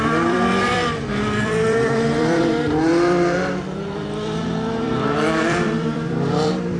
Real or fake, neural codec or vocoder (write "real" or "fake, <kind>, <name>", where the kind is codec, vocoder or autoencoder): fake, vocoder, BigVGAN v2